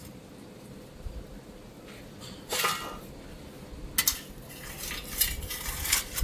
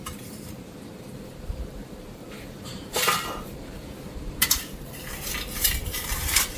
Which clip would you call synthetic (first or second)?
second